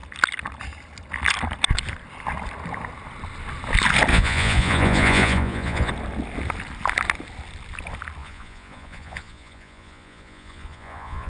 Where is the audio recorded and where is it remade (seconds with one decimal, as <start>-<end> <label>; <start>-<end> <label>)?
0.0-4.1 recorded; 4.1-5.9 remade; 5.9-8.2 recorded; 8.2-11.3 remade